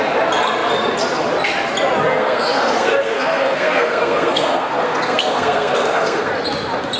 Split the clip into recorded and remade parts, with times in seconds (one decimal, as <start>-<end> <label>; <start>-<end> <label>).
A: 0.0-2.1 recorded; 2.1-6.3 remade; 6.3-7.0 recorded